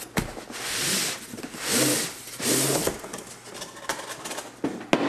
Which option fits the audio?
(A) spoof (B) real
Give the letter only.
B